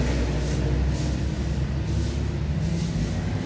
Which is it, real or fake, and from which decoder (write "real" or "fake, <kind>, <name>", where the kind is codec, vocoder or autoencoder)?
real